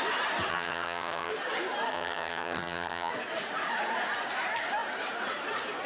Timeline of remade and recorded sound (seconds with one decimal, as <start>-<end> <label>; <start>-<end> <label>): 0.0-0.5 recorded; 0.5-1.3 remade; 1.3-1.9 recorded; 1.9-3.1 remade; 3.1-5.9 recorded